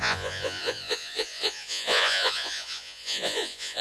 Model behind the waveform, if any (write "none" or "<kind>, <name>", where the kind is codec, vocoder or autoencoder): vocoder, Vocos